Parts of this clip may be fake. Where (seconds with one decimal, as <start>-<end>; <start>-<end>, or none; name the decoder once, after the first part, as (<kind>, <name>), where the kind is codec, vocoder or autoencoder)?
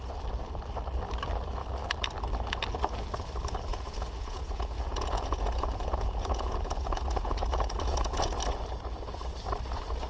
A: 3.7-8.3 (vocoder, Vocos)